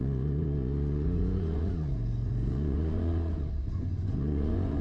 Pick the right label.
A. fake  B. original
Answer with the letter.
A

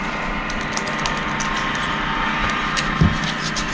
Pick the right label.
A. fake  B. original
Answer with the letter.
B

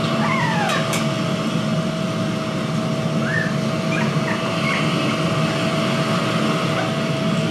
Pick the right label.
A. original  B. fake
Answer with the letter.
A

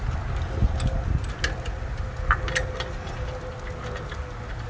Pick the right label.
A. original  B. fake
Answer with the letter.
A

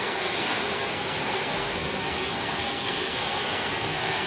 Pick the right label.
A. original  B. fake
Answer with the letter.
B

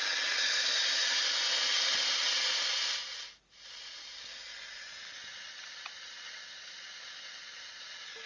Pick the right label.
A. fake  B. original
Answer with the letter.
B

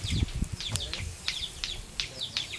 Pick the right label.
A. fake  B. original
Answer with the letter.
B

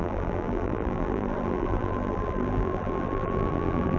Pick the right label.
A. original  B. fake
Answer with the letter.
B